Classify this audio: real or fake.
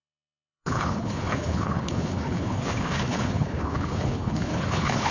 fake